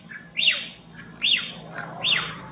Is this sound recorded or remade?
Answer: recorded